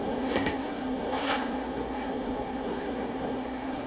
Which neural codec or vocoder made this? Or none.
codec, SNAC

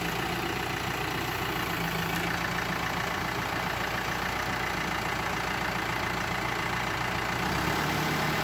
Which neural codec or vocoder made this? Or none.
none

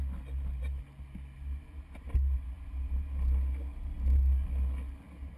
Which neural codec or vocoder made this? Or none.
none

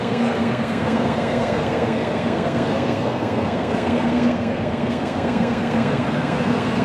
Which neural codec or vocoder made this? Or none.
codec, SNAC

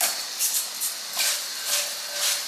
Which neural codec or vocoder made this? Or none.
none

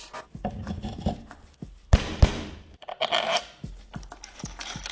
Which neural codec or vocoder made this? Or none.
none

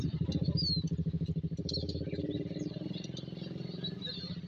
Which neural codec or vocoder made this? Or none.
none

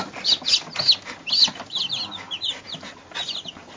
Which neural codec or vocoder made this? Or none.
none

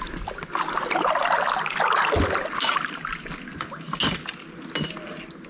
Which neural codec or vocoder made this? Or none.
none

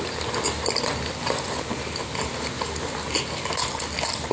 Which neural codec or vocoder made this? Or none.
none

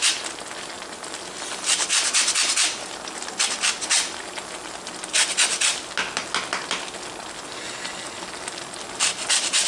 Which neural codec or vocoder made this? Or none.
none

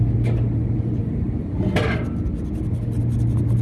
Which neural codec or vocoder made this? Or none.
none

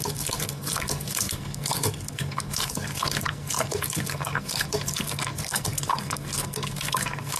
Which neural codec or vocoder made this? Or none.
codec, SNAC